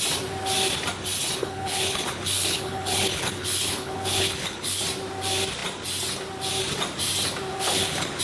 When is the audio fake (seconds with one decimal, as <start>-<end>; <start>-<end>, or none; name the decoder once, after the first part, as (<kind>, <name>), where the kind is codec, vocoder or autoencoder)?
1.4-4.8 (codec, HILCodec); 7.5-8.2